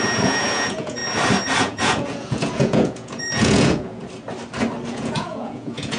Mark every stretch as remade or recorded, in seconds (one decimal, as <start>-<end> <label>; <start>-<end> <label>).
0.0-1.0 remade; 1.0-1.6 recorded; 1.6-4.0 remade; 4.0-4.9 recorded; 4.9-6.0 remade